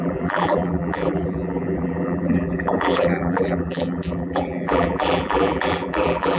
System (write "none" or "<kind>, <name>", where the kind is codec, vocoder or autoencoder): vocoder, BigVGAN v2